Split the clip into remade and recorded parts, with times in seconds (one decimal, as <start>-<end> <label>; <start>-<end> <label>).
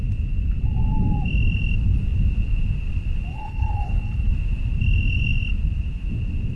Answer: 0.0-3.3 recorded; 3.3-4.3 remade; 4.3-6.6 recorded